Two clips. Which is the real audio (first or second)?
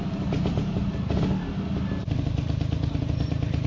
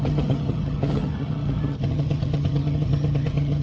first